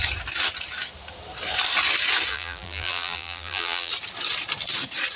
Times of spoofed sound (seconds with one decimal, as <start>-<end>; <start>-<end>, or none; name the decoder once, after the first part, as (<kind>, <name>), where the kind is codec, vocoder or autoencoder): 2.3-3.9 (vocoder, BigVGAN v2)